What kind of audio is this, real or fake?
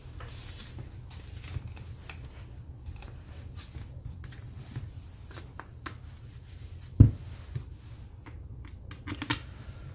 real